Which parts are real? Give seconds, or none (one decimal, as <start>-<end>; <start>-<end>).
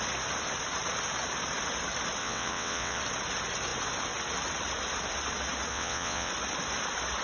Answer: 0.0-2.2; 3.0-5.7; 6.3-7.2